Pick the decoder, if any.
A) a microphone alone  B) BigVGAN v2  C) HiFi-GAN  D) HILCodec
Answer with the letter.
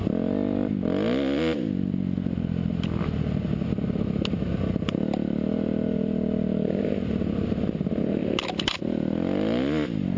A